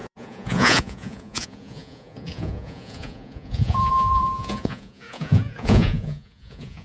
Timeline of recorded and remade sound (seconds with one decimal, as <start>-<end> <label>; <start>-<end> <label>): 0.0-6.8 remade